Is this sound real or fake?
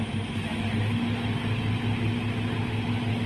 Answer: real